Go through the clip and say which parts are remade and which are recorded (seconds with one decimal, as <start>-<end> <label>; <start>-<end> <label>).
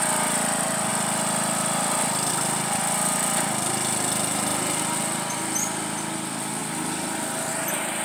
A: 0.0-2.8 recorded; 2.8-3.7 remade; 3.7-8.0 recorded